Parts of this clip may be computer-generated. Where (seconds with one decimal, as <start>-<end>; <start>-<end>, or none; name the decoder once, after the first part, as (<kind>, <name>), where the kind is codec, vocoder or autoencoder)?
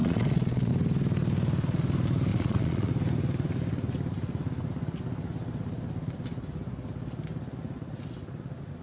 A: 0.0-0.7 (vocoder, Vocos); 2.3-2.9